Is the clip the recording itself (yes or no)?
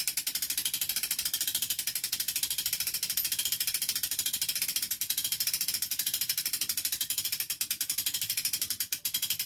no